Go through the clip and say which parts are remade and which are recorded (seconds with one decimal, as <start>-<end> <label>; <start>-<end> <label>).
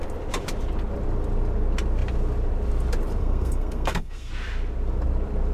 0.0-3.2 recorded; 3.2-4.3 remade; 4.3-5.5 recorded